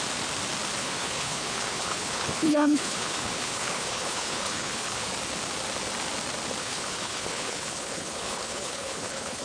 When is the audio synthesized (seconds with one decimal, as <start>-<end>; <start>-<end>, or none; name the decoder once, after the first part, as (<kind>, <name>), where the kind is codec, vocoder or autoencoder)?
0.8-5.1 (codec, HILCodec); 6.6-9.4